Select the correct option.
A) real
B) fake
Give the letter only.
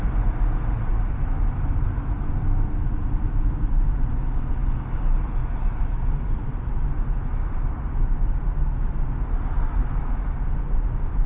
A